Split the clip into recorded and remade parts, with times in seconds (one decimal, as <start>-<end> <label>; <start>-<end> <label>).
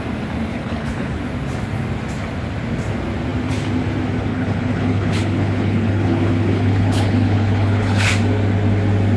0.0-0.5 recorded; 0.5-1.2 remade; 1.2-4.3 recorded; 4.3-8.1 remade; 8.1-9.2 recorded